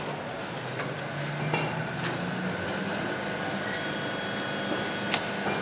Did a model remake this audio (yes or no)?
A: no